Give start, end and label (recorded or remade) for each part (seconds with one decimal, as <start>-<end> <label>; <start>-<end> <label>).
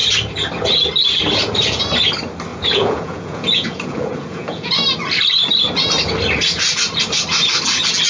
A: 0.0-2.5 recorded; 2.5-4.7 remade; 4.7-8.1 recorded